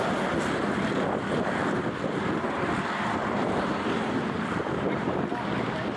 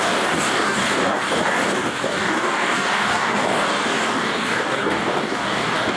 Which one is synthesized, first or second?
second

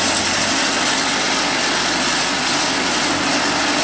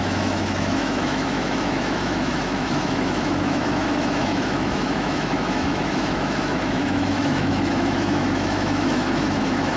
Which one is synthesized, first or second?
second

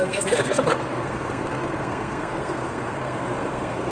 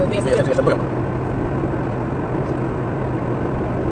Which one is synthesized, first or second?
first